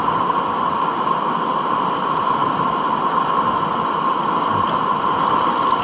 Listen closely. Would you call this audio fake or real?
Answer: real